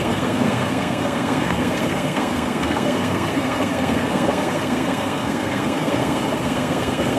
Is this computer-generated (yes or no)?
yes